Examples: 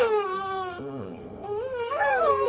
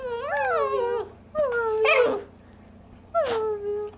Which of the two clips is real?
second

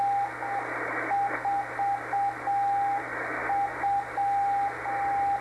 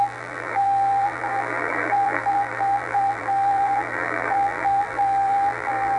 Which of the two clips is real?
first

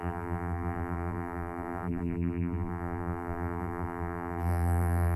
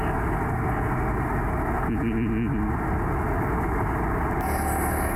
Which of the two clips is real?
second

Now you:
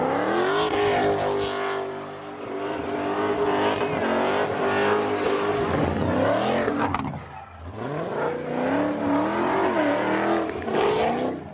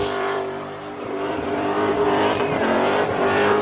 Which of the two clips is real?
first